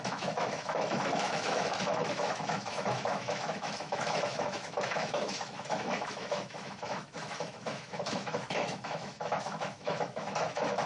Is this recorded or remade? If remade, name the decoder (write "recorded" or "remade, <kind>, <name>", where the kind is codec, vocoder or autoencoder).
remade, autoencoder, DAC-VAE